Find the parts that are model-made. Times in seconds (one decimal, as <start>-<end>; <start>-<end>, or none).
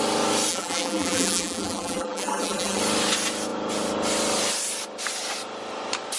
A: 0.5-2.8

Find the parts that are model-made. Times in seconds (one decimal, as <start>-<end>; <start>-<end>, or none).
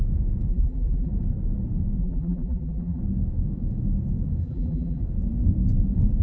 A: 0.5-1.1; 2.0-3.0; 4.4-5.0